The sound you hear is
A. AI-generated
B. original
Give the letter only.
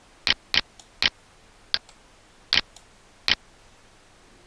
B